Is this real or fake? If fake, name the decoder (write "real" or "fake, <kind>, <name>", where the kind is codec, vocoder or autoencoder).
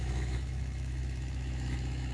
fake, autoencoder, DAC-VAE